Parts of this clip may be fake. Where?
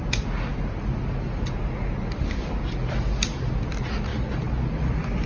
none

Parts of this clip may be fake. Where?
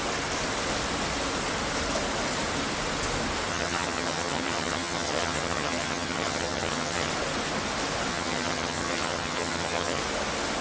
3.5-7.1 (vocoder, HiFi-GAN); 8.1-10.0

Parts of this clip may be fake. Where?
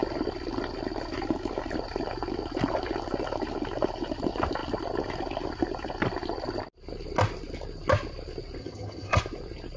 8.6-9.2 (vocoder, HiFi-GAN)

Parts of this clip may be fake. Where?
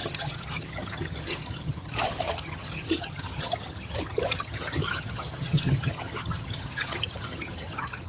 0.0-8.1 (vocoder, HiFi-GAN)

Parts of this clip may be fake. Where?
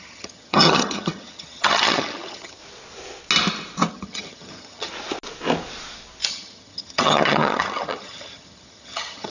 0.0-2.6 (vocoder, HiFi-GAN); 3.9-4.9; 6.3-9.3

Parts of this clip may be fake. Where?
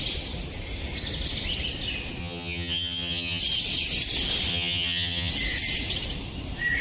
2.2-3.4 (vocoder, HiFi-GAN); 4.5-5.3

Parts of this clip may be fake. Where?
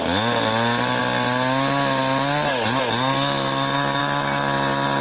none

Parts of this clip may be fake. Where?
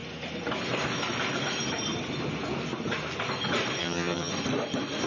3.8-4.3 (vocoder, HiFi-GAN)